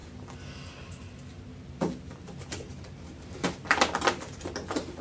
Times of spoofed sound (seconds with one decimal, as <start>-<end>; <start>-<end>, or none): 0.0-1.3